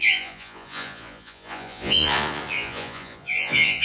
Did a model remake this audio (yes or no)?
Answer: yes